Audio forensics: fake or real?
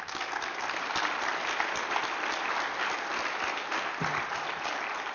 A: real